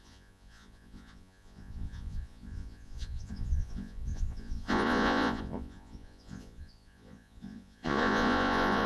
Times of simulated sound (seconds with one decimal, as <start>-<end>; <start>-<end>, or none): 0.0-8.9